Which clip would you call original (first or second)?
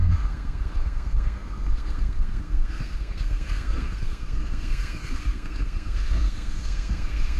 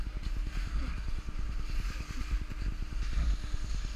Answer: second